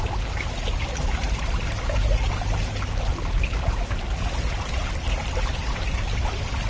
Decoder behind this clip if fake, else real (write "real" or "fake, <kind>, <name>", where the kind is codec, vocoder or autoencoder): real